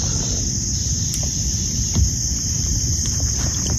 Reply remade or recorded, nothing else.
remade